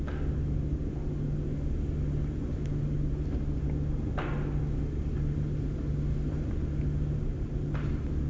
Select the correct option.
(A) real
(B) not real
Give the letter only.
A